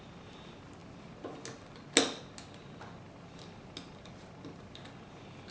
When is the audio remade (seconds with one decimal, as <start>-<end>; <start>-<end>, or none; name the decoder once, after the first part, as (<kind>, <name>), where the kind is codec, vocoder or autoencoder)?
none